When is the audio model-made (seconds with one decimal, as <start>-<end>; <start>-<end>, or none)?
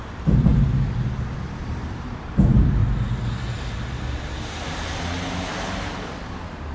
0.0-0.5; 1.3-2.8; 5.5-6.7